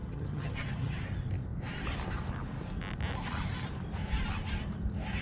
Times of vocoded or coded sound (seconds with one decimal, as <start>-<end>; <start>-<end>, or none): 0.0-1.0